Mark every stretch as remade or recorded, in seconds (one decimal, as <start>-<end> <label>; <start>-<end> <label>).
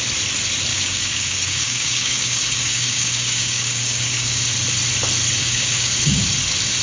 0.0-0.7 recorded; 0.7-4.5 remade; 4.5-5.4 recorded; 5.4-6.2 remade; 6.2-6.8 recorded